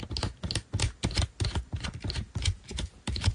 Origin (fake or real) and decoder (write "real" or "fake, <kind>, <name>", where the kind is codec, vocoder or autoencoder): real